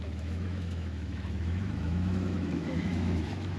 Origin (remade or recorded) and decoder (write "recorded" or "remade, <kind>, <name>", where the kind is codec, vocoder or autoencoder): remade, autoencoder, DAC-VAE